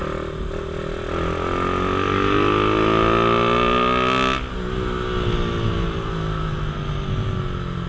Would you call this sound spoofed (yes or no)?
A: no